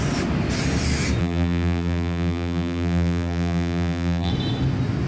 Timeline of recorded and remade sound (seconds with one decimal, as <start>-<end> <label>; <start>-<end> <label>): 0.0-1.2 recorded; 1.2-4.3 remade; 4.3-5.1 recorded